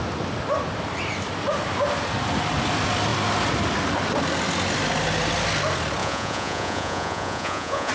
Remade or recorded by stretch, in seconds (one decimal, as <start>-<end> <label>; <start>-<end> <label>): 0.0-6.0 recorded; 6.0-7.9 remade